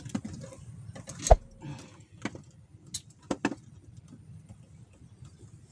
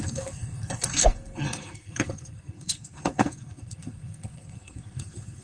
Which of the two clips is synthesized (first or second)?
second